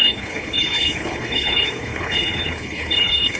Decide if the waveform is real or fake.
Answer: fake